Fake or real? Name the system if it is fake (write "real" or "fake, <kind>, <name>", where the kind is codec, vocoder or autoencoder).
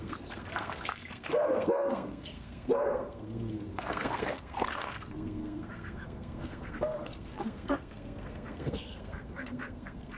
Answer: fake, codec, SNAC